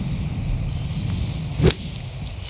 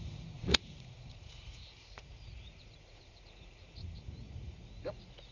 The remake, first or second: second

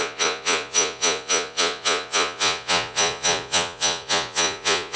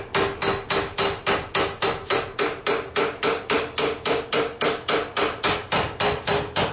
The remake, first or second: first